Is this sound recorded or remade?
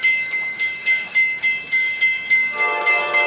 remade